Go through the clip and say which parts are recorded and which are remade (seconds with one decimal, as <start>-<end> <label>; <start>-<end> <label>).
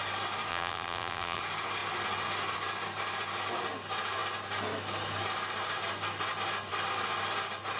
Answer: 0.0-0.5 recorded; 0.5-1.4 remade; 1.4-7.8 recorded